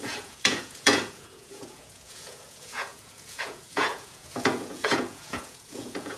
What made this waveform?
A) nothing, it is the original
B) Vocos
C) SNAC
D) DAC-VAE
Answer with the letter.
B